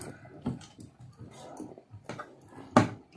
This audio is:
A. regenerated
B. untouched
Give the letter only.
B